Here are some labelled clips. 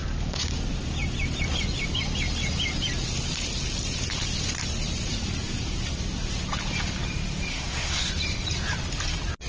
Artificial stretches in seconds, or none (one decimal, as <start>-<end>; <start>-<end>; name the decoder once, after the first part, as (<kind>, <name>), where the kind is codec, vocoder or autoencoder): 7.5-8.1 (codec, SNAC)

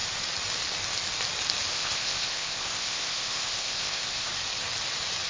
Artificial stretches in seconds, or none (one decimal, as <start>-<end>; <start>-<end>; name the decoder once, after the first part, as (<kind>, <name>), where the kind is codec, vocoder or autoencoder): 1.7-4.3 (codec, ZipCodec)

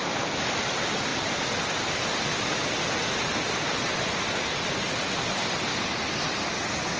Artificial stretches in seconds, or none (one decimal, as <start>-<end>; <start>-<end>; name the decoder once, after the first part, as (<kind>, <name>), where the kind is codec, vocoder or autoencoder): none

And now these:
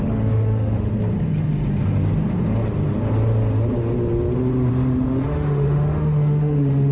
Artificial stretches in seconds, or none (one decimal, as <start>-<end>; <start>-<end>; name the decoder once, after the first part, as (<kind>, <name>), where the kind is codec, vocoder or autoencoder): 0.0-0.9 (autoencoder, DAC-VAE); 4.7-6.9

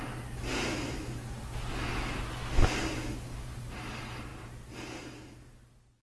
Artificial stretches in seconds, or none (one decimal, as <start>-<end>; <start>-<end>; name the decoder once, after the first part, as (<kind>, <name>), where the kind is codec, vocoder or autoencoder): none

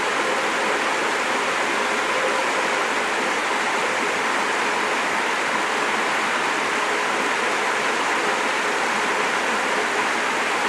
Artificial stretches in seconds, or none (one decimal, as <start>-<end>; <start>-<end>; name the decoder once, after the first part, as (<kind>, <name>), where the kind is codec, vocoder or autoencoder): none